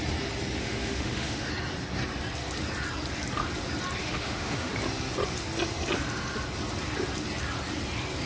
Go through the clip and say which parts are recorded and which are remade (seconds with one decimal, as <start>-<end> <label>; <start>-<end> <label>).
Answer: 0.0-0.6 recorded; 0.6-1.5 remade; 1.5-4.0 recorded; 4.0-4.7 remade; 4.7-8.3 recorded